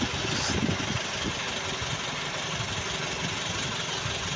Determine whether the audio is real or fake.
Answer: real